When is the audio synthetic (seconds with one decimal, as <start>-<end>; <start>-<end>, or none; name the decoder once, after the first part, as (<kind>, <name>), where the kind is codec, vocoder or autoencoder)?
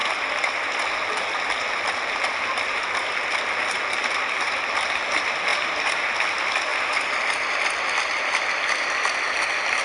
1.5-6.7 (vocoder, BigVGAN v2); 7.7-9.8